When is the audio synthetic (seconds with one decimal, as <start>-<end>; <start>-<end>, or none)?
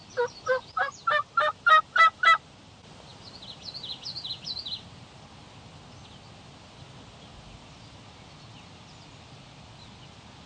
none